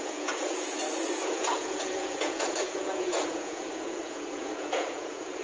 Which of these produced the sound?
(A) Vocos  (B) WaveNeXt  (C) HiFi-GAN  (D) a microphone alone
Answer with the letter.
A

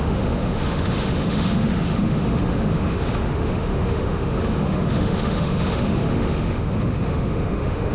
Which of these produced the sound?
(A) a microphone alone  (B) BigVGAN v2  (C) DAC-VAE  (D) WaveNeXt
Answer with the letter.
C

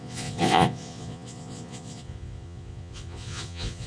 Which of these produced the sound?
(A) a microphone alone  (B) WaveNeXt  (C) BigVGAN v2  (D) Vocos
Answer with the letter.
D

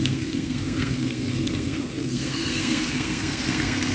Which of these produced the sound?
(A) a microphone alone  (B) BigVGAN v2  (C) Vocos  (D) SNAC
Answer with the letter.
D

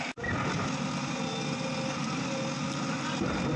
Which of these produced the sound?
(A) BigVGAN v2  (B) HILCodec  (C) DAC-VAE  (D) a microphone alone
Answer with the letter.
D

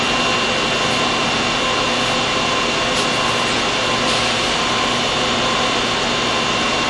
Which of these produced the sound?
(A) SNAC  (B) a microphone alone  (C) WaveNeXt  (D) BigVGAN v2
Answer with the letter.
B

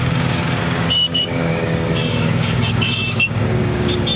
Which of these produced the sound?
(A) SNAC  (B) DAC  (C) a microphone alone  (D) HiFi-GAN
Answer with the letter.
B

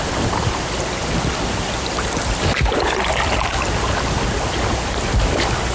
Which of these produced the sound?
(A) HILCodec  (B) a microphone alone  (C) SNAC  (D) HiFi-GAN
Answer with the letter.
B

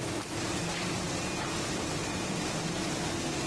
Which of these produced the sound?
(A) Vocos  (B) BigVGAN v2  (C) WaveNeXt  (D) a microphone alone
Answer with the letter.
D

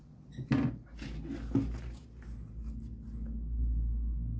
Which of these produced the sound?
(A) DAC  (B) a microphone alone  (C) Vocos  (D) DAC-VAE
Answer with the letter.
B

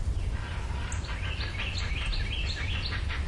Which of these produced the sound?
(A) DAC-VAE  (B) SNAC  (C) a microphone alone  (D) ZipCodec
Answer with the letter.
C